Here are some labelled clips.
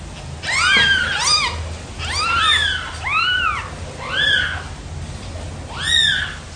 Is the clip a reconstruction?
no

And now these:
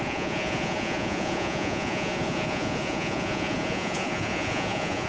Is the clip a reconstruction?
yes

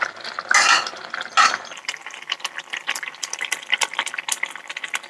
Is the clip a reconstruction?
no